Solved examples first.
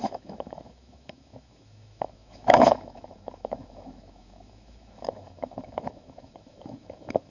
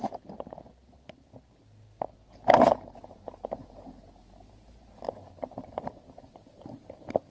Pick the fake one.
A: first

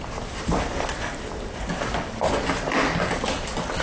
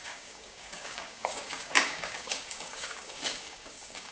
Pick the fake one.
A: second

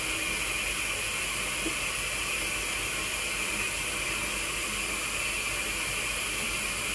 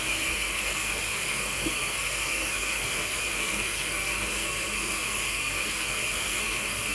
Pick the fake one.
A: second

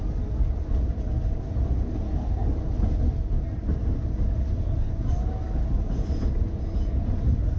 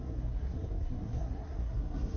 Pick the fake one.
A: second